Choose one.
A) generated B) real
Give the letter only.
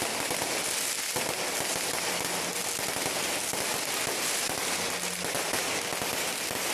B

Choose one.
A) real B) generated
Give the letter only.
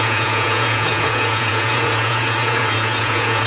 B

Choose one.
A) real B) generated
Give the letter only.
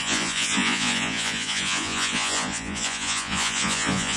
B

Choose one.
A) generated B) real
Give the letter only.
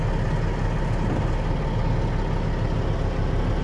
B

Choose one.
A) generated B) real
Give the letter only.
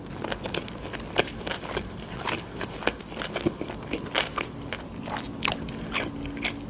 B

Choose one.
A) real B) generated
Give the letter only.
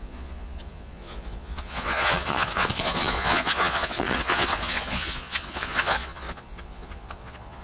B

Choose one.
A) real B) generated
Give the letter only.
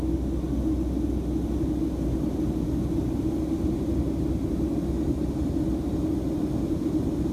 A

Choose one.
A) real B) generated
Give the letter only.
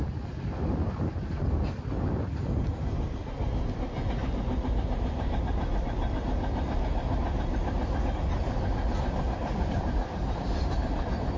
A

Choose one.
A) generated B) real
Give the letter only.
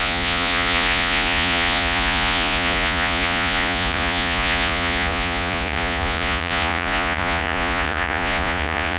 A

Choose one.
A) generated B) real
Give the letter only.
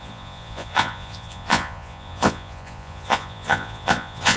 A